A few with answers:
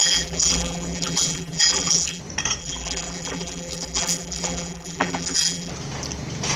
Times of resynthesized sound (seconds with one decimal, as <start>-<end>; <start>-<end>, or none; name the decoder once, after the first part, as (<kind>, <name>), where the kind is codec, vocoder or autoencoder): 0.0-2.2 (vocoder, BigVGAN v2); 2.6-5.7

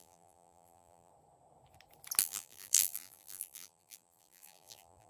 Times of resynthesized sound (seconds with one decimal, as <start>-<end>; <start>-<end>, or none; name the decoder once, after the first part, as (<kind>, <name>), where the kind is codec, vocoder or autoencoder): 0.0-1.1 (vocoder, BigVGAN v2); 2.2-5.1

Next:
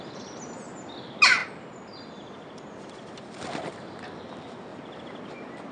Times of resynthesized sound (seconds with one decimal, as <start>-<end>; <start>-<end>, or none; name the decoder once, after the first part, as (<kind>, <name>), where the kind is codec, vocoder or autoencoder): 1.4-3.4 (vocoder, BigVGAN v2); 4.7-5.7

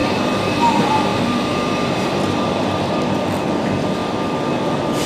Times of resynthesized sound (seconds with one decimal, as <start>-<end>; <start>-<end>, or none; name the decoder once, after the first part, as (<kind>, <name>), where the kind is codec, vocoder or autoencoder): 0.0-0.6 (vocoder, BigVGAN v2); 1.1-3.5